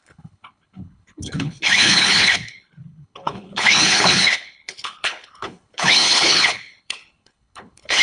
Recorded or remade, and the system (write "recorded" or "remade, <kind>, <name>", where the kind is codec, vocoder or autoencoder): remade, codec, HILCodec